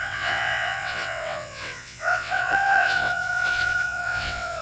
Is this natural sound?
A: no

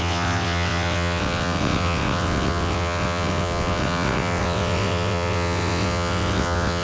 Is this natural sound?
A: no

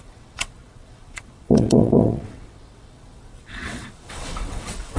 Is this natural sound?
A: no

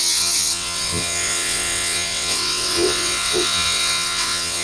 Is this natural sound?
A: no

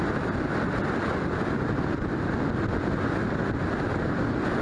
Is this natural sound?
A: yes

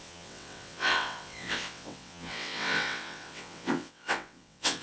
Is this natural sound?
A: no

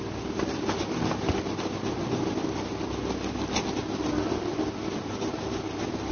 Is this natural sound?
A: yes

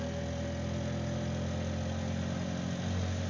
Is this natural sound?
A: yes